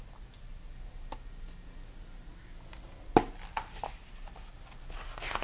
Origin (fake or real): real